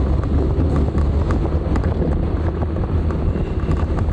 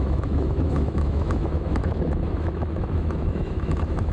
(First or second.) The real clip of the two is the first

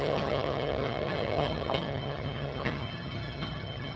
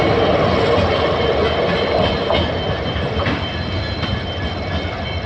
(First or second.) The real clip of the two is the second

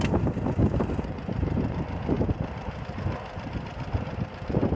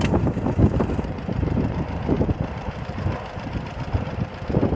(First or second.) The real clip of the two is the first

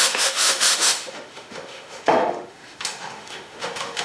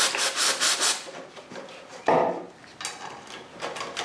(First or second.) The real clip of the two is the second